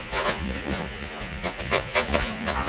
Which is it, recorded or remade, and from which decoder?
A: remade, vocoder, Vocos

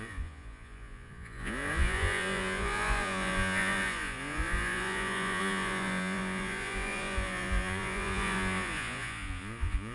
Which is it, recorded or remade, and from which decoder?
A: remade, vocoder, Vocos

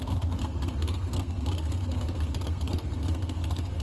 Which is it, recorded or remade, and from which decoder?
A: remade, codec, SNAC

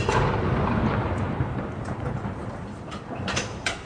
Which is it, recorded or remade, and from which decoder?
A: remade, vocoder, BigVGAN v2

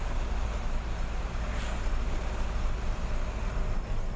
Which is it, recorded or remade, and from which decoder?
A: recorded